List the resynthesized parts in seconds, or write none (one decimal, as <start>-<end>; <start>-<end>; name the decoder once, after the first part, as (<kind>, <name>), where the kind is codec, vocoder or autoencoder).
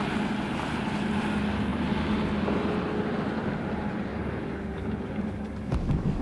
4.1-6.2 (codec, DAC)